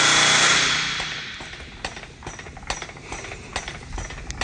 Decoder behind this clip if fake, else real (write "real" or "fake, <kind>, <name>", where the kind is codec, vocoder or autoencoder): real